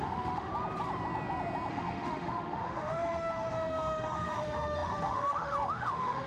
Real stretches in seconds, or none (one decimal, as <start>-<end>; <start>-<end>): 0.5-1.7